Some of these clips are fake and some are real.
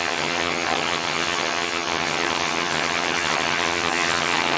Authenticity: fake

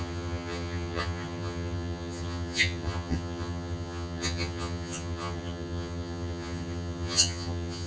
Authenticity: fake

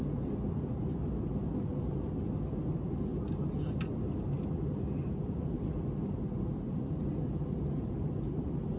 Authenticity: real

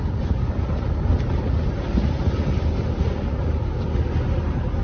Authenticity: real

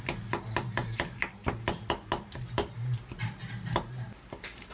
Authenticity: real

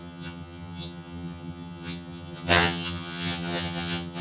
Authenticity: fake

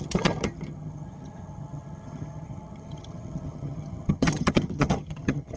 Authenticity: fake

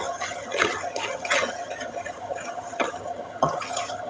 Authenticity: fake